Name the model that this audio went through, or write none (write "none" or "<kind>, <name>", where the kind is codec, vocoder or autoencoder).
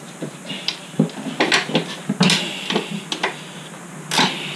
none